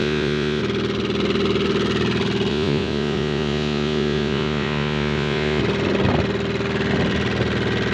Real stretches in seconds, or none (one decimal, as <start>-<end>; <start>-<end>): 0.6-2.5; 5.6-7.9